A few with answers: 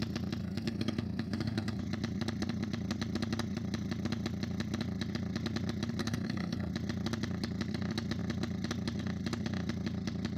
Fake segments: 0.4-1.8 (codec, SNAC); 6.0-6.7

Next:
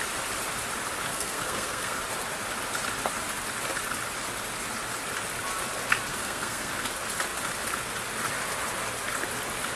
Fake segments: 1.1-2.0 (codec, SNAC); 6.1-6.7

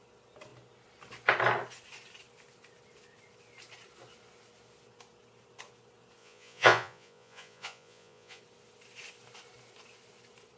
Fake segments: 6.2-8.4 (vocoder, Vocos)

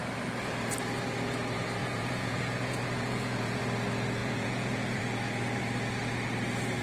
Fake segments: 1.8-3.6 (vocoder, Vocos); 4.2-5.0

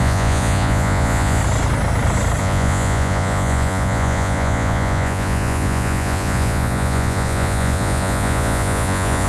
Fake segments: 0.0-1.4 (vocoder, Vocos); 2.4-9.3

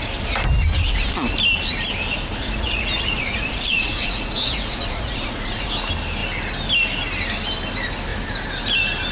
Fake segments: 2.3-5.7 (vocoder, Vocos)

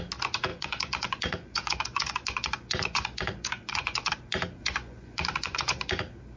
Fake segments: 0.5-4.1 (vocoder, Vocos); 4.6-5.9